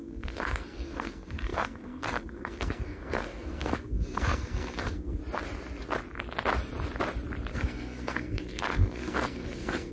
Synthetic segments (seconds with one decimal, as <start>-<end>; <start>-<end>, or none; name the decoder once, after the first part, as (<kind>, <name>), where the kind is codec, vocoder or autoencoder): 0.0-5.2 (codec, SNAC); 7.5-9.9